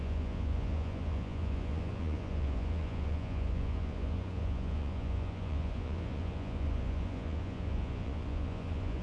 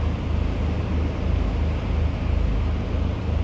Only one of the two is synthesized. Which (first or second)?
first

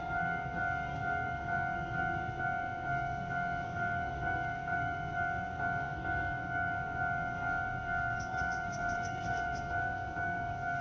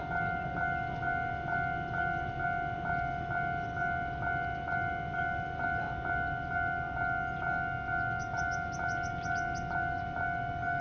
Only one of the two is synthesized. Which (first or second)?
first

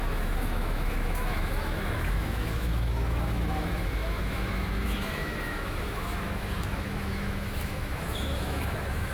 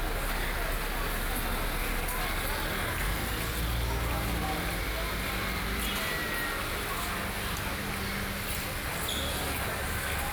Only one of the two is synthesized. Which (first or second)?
first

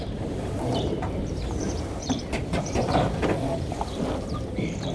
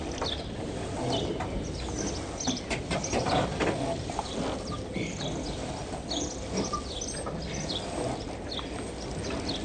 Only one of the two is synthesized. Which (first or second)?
first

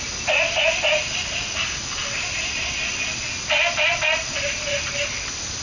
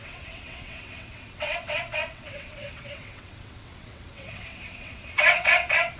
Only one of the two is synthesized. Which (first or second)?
second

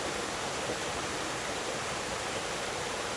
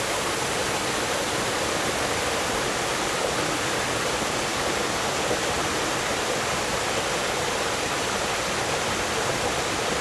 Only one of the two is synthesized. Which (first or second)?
first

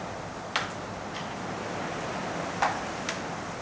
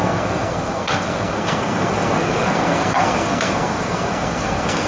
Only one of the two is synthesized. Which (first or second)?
second